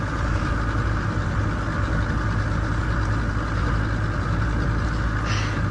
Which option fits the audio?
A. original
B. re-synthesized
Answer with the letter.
A